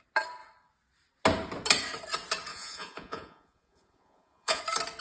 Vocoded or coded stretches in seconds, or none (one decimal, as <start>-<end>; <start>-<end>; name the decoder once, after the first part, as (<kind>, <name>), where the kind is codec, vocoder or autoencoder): 2.5-4.6 (vocoder, Vocos)